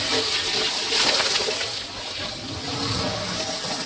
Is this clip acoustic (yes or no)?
yes